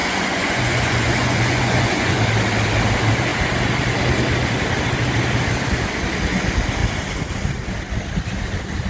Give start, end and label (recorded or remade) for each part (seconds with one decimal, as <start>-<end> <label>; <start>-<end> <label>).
0.0-2.2 remade; 2.2-8.9 recorded